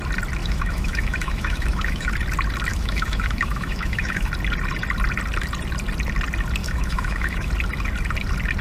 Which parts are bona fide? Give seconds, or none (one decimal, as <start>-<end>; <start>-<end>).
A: 0.0-0.4; 2.1-2.7; 4.3-6.6; 7.5-8.6